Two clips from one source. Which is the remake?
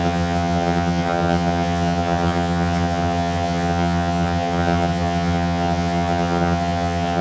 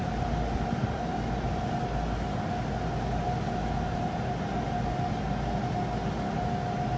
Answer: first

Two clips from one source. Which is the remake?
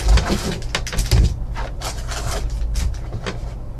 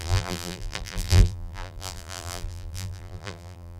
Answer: second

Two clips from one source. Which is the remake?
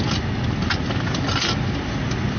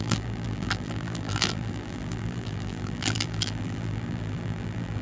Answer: second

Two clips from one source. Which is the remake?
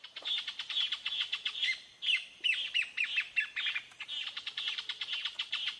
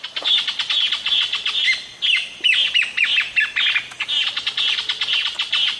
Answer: first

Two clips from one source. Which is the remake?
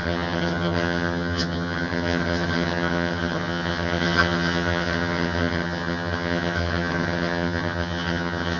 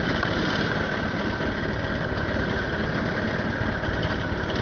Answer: first